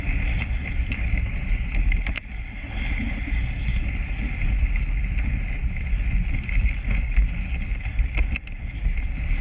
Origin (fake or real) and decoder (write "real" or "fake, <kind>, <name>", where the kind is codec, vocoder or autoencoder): real